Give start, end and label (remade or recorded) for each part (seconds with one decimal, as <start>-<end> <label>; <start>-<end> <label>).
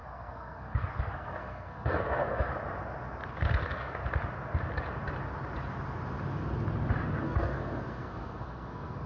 0.0-2.5 remade; 2.5-3.3 recorded; 3.3-4.0 remade; 4.0-7.2 recorded; 7.2-9.1 remade